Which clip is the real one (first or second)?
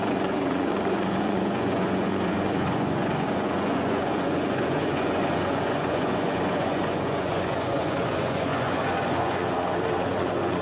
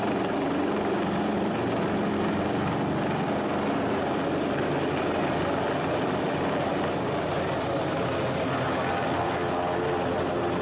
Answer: second